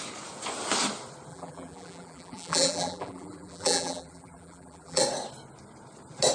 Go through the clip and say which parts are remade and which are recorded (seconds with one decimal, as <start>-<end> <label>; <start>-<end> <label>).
0.0-1.3 recorded; 1.3-5.0 remade; 5.0-6.3 recorded